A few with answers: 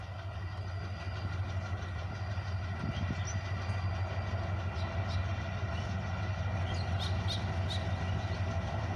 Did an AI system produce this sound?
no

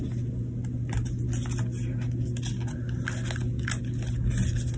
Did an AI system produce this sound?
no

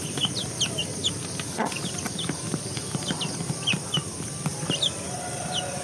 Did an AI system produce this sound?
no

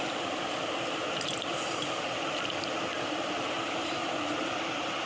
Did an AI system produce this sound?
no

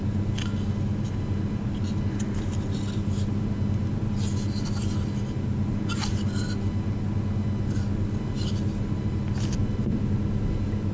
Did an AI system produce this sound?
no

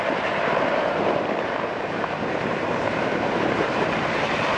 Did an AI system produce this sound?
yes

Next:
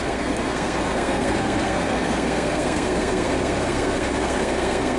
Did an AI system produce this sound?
yes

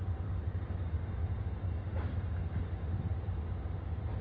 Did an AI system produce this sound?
no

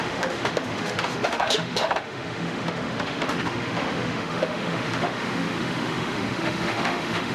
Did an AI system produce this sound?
yes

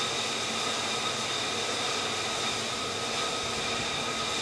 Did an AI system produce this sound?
no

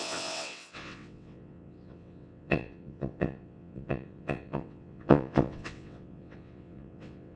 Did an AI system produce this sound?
yes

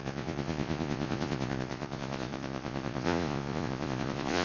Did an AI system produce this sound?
yes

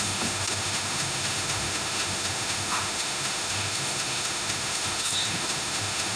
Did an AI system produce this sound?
yes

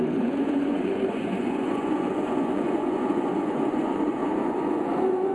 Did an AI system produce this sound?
yes